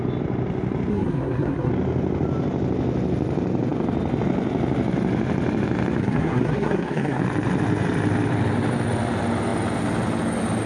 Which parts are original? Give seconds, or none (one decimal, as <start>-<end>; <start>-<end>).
0.0-0.9; 1.7-6.0; 7.2-10.7